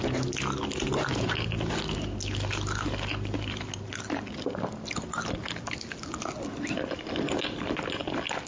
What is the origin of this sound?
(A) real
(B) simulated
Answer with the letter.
A